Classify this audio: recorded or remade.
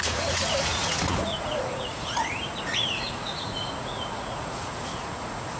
remade